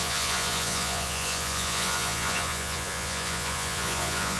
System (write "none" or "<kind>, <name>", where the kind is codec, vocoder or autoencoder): vocoder, Vocos